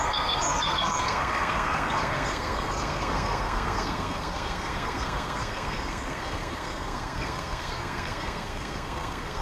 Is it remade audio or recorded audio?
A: remade